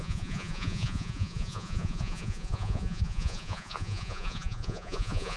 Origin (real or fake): fake